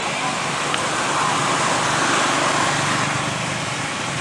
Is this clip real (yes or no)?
yes